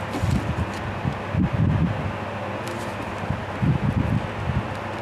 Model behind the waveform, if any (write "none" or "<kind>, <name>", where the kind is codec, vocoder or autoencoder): none